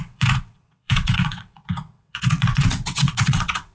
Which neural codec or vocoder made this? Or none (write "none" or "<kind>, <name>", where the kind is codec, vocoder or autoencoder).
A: vocoder, WaveNeXt